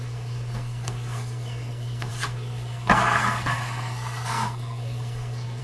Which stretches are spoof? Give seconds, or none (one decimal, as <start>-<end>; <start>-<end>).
0.0-5.6